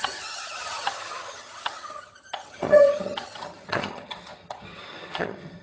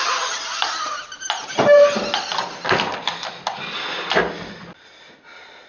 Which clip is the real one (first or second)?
second